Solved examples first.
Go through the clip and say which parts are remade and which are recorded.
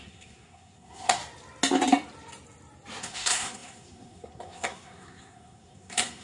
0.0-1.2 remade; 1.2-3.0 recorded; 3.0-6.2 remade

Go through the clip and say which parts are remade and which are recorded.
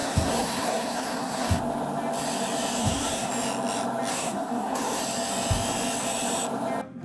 0.0-1.6 remade; 1.6-2.8 recorded; 2.8-3.3 remade; 3.3-4.1 recorded; 4.1-5.0 remade; 5.0-7.0 recorded